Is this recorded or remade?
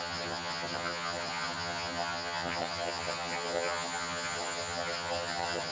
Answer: remade